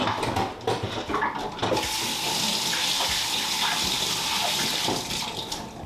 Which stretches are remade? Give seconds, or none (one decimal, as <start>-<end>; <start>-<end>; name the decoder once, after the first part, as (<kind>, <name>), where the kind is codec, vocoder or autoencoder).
none